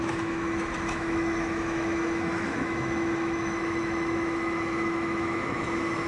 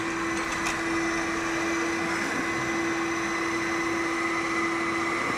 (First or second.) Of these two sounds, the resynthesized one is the first